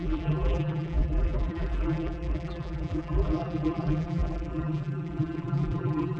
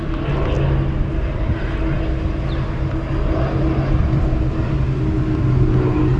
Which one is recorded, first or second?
second